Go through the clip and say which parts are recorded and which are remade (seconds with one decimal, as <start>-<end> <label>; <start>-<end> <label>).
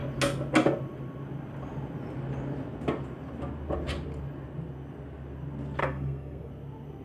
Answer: 0.0-5.8 recorded; 5.8-6.5 remade; 6.5-7.0 recorded